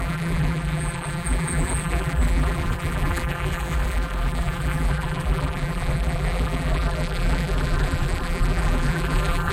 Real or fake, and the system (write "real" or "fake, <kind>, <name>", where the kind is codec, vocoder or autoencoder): fake, vocoder, BigVGAN v2